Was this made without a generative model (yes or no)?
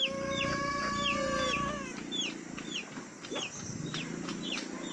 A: yes